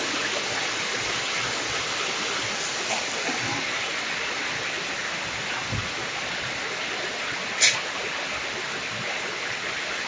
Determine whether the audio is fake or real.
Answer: real